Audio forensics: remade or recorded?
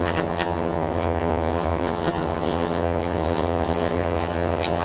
remade